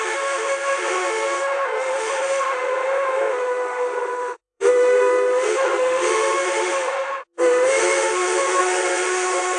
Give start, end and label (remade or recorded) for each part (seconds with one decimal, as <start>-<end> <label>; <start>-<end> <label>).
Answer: 0.0-9.6 remade